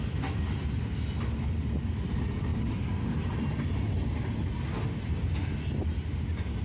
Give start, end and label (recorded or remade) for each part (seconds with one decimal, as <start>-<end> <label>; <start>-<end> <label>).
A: 0.0-6.6 recorded